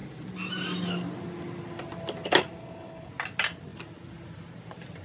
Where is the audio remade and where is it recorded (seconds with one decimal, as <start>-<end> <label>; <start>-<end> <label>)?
0.0-2.6 recorded; 2.6-3.1 remade; 3.1-5.0 recorded

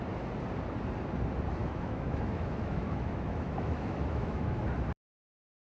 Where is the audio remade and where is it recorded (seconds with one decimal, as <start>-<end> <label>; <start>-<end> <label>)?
0.0-1.6 recorded; 1.6-4.6 remade; 4.6-5.7 recorded